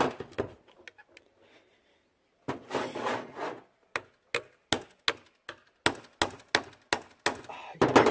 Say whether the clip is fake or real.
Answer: real